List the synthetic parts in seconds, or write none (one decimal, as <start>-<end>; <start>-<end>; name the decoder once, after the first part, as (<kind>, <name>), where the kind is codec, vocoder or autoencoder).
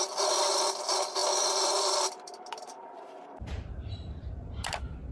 1.2-4.3 (vocoder, BigVGAN v2)